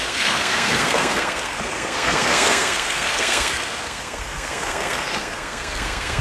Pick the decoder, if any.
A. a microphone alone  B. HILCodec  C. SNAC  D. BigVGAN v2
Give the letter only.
C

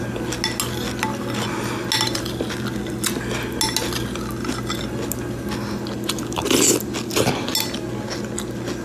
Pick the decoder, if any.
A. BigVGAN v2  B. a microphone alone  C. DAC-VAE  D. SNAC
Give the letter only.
B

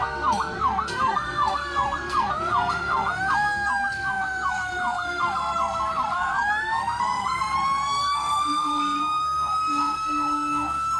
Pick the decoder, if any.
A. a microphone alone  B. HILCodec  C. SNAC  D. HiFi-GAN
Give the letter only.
C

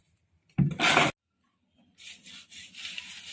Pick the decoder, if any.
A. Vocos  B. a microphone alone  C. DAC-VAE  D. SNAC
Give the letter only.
B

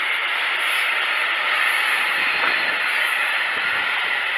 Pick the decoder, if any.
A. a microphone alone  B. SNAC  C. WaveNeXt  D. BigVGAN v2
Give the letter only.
A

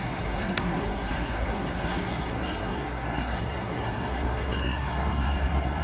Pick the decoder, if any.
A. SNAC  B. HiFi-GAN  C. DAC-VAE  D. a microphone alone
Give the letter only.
A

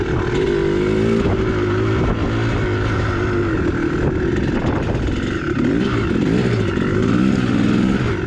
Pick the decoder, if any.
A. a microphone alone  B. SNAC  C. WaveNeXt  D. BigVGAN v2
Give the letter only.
A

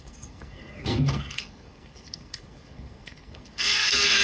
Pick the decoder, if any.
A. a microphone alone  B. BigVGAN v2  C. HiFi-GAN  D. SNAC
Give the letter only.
D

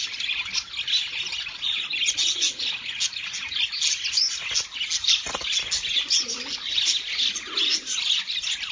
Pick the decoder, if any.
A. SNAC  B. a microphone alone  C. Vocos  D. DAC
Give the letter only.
B